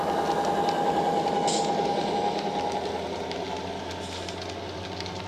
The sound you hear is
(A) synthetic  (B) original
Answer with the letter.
B